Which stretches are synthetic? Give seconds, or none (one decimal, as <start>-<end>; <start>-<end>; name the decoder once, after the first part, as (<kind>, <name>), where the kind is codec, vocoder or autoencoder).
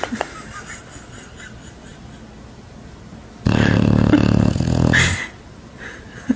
none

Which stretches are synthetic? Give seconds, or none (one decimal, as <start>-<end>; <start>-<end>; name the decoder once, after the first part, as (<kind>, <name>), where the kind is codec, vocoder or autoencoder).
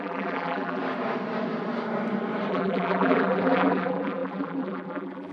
0.0-0.8 (vocoder, BigVGAN v2); 2.5-5.3